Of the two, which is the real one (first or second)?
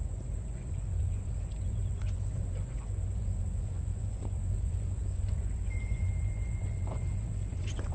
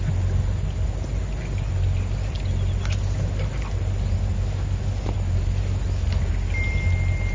second